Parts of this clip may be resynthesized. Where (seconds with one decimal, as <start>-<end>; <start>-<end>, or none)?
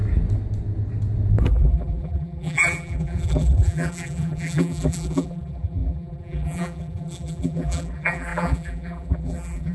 1.5-9.7